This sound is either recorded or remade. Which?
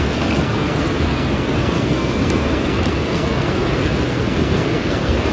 remade